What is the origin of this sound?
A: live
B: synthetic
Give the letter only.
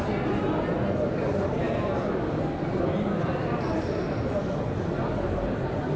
A